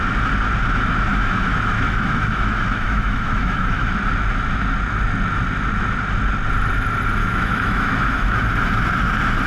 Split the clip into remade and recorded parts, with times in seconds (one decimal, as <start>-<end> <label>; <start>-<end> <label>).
0.0-1.1 recorded; 1.1-3.9 remade; 3.9-7.2 recorded; 7.2-8.5 remade; 8.5-9.5 recorded